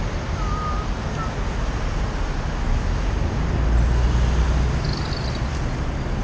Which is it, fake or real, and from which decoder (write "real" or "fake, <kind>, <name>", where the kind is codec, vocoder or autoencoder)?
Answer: real